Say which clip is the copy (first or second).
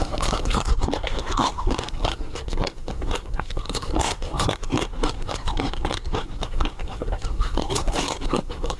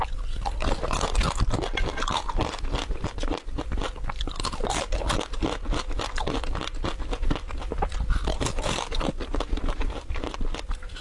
first